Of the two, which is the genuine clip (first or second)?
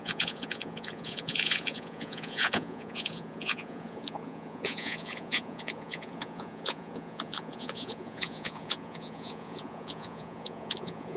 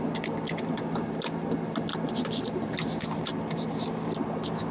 second